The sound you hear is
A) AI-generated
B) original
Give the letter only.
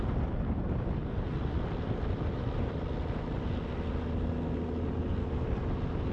B